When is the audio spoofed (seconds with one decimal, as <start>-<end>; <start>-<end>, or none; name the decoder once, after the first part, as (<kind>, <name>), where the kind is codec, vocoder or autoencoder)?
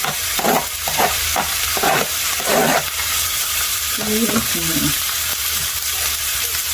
0.0-5.3 (vocoder, BigVGAN v2); 6.0-6.7